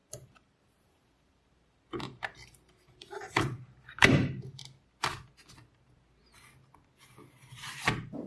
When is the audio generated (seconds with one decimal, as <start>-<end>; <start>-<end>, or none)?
0.0-4.6